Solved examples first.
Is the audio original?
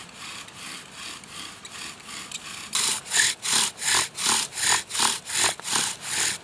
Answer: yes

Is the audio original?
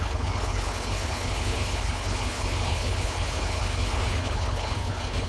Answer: no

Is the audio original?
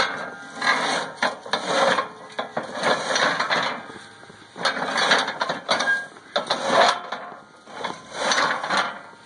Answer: yes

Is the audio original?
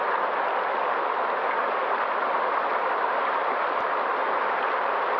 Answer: yes